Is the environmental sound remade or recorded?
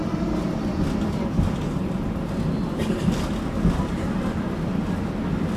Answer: recorded